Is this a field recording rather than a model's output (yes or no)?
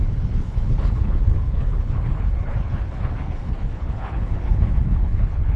no